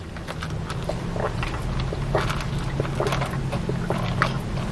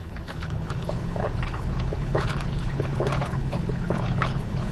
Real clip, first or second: first